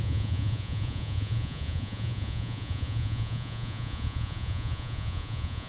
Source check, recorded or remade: remade